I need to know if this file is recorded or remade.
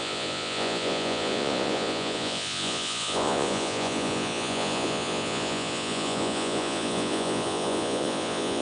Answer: remade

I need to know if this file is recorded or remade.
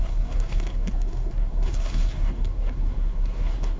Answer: remade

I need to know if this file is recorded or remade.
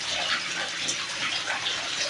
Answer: recorded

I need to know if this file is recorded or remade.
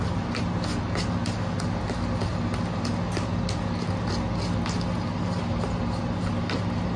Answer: recorded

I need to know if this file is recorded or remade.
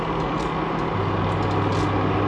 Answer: recorded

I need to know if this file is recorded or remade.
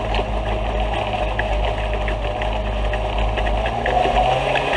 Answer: recorded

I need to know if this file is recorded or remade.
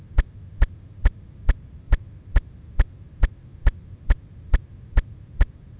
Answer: recorded